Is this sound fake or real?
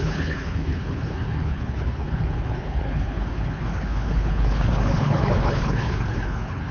fake